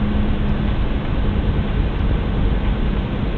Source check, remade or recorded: recorded